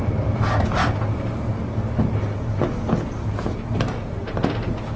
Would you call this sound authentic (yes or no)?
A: yes